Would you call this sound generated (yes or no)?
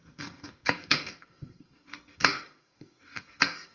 yes